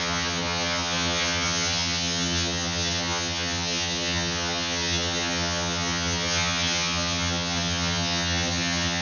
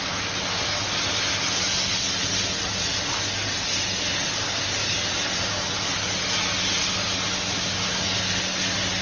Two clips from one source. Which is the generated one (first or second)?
first